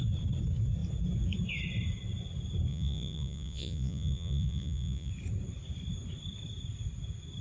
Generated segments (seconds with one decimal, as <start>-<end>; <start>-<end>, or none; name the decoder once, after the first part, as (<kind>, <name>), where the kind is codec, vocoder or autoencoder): 2.7-5.1 (vocoder, Vocos)